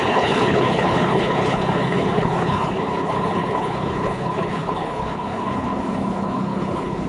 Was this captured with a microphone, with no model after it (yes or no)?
no